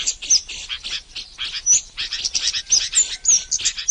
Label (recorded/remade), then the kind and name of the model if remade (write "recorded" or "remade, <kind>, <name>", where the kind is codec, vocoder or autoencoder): recorded